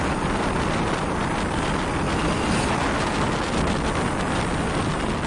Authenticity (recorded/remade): recorded